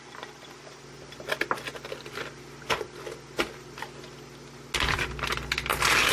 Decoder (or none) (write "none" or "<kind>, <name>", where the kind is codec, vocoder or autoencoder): none